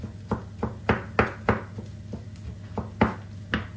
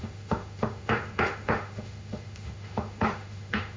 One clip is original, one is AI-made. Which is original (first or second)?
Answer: first